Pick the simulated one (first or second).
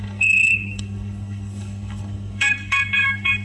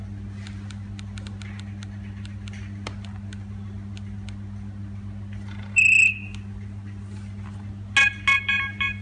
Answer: first